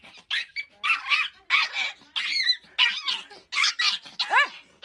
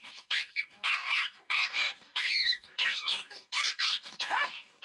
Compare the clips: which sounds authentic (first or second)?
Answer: first